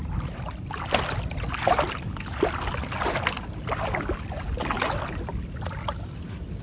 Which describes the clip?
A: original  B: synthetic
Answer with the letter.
A